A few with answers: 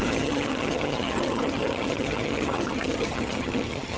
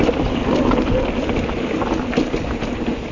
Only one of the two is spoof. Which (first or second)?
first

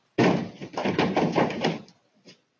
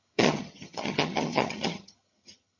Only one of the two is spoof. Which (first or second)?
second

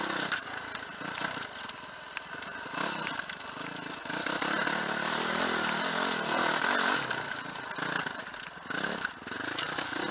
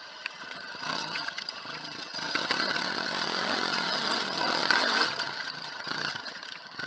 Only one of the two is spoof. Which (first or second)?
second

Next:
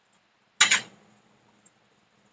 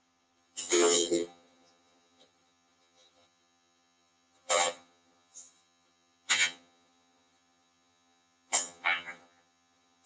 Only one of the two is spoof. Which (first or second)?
second